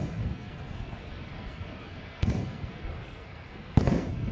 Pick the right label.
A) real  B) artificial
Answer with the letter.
B